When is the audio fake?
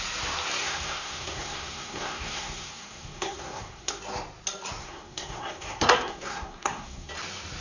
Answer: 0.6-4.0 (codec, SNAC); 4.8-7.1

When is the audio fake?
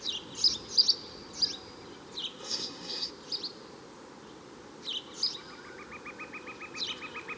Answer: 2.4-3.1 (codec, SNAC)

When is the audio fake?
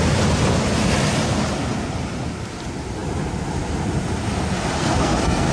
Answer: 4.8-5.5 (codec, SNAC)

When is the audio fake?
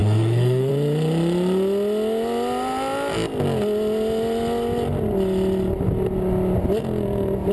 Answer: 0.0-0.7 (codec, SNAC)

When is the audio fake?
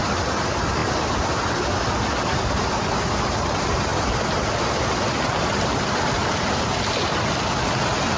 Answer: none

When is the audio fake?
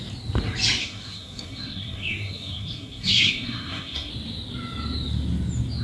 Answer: 0.8-4.1 (codec, SNAC)